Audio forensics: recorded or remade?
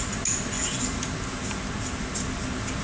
recorded